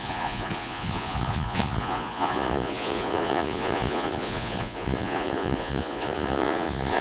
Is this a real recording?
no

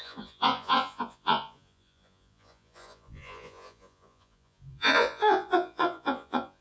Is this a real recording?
no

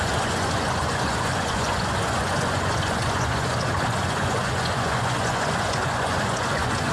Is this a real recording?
no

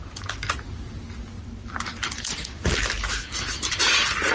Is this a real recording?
yes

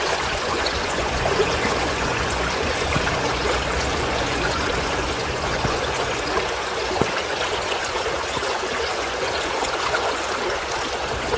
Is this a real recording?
no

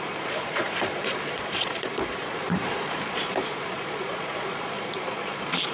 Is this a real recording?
no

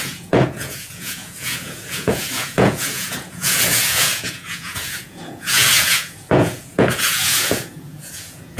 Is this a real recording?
no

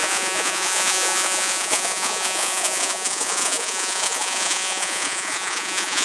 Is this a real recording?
no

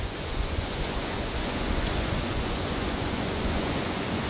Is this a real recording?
no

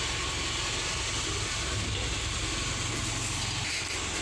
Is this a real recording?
yes